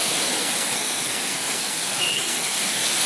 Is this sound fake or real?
fake